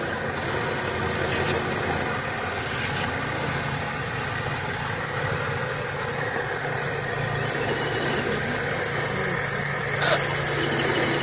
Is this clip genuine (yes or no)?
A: yes